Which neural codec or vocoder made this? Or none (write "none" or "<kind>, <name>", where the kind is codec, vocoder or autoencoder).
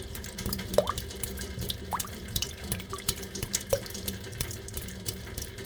vocoder, BigVGAN v2